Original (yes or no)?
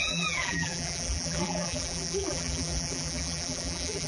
no